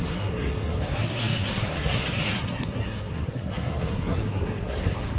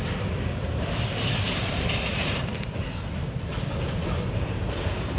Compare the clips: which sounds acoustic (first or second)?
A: second